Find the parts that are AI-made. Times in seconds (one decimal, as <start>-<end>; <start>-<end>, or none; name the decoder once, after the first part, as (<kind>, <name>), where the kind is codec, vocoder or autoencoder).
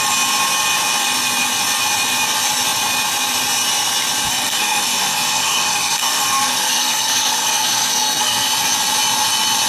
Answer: 4.3-8.5 (codec, SNAC)